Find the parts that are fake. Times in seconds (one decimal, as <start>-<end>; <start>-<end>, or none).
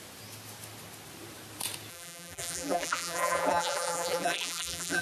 1.9-5.0